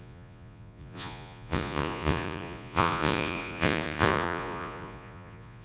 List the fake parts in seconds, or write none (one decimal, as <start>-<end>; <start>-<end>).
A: 0.0-5.6